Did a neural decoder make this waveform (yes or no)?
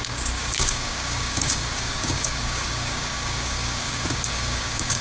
yes